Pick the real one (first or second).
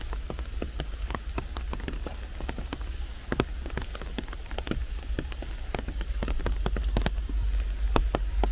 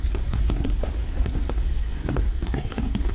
first